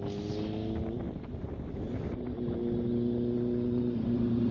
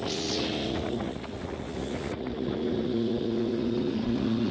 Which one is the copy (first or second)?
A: second